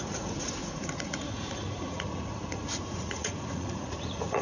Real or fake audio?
fake